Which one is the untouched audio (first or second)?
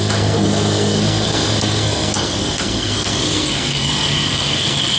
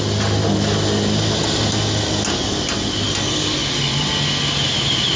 second